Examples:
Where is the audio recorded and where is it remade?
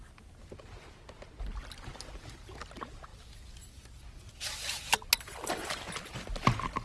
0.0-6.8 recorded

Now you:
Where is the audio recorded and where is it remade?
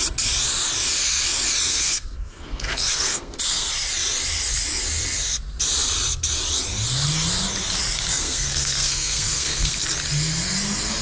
0.0-1.7 recorded; 1.7-3.7 remade; 3.7-8.1 recorded; 8.1-9.8 remade; 9.8-11.0 recorded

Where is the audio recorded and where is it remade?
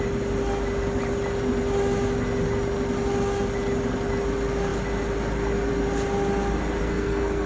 0.0-6.8 recorded; 6.8-7.5 remade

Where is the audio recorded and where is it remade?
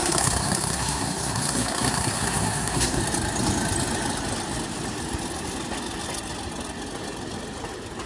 0.0-3.0 remade; 3.0-8.1 recorded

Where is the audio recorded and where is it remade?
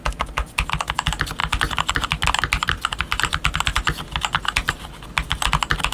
0.0-5.9 recorded